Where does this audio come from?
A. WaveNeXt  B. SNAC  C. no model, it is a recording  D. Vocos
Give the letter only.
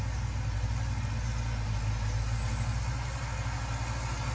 C